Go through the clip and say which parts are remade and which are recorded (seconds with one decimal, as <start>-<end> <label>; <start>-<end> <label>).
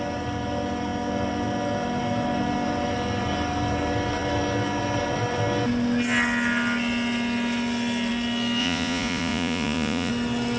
0.0-8.6 recorded; 8.6-10.1 remade; 10.1-10.6 recorded